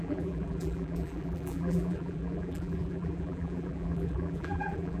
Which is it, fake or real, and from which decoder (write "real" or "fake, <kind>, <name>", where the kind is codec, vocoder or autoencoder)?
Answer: fake, vocoder, BigVGAN v2